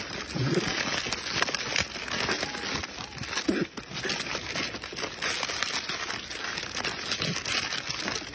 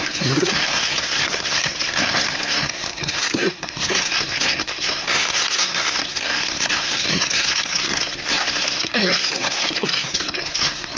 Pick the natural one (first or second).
first